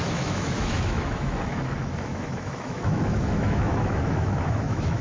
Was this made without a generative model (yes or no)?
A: no